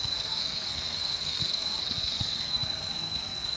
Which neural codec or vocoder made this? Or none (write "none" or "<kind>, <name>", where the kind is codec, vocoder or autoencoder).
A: codec, SNAC